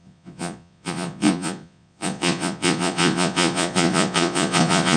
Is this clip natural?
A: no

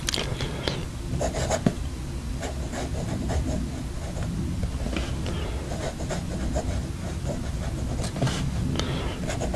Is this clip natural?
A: yes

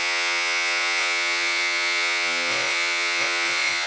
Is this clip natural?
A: no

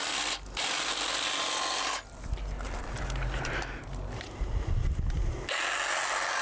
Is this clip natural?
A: yes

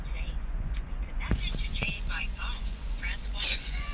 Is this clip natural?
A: no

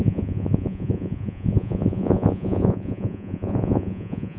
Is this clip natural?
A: no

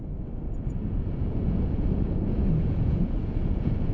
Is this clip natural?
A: no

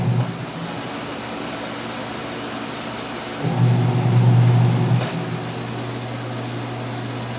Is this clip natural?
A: yes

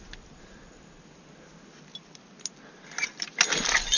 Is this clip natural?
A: yes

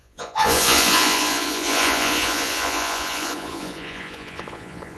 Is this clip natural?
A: no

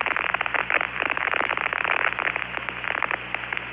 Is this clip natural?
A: yes